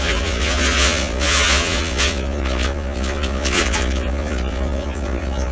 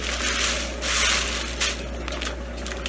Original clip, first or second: second